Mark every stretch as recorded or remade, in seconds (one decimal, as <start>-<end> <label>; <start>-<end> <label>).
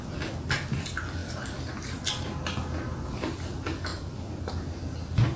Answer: 0.0-5.4 recorded